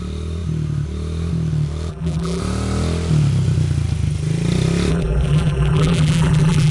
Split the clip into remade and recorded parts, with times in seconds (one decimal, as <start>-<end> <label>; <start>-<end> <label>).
0.0-1.9 recorded; 1.9-2.4 remade; 2.4-4.9 recorded; 4.9-6.7 remade